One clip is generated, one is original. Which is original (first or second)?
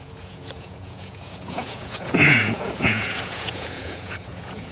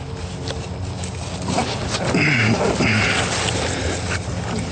second